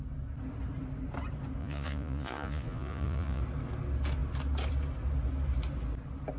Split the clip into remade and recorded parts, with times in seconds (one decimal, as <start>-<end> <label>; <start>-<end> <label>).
0.0-1.6 recorded; 1.6-3.4 remade; 3.4-6.4 recorded